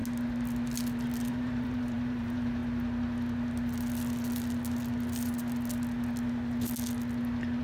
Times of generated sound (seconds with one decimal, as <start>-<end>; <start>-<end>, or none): 1.3-2.6